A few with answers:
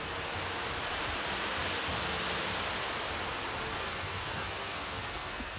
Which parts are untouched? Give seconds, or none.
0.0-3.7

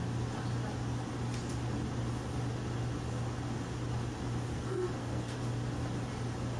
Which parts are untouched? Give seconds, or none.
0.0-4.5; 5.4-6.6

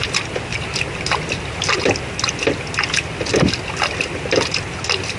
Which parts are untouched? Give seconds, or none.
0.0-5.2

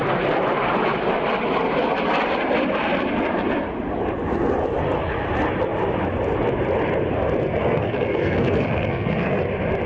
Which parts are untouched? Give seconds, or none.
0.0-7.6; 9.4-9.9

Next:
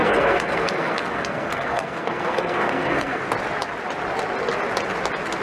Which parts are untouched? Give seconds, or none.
3.2-5.4

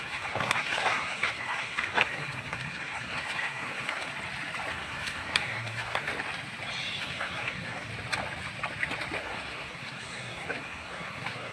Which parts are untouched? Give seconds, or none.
4.1-4.7; 6.1-7.0; 7.9-9.2

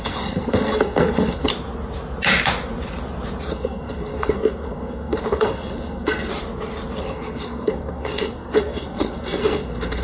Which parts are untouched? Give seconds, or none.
1.5-3.5; 6.3-7.0

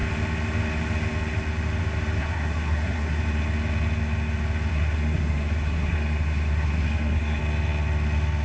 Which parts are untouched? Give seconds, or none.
0.0-2.2; 3.2-4.7; 7.4-8.4